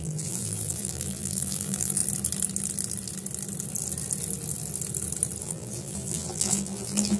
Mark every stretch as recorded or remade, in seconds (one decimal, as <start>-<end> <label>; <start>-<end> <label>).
0.0-2.0 remade; 2.0-5.4 recorded; 5.4-7.2 remade